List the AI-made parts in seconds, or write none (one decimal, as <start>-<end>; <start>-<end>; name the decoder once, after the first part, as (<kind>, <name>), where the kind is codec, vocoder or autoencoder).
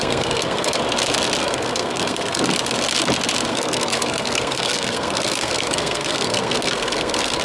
0.0-0.8 (codec, SNAC); 1.4-2.4; 3.5-7.4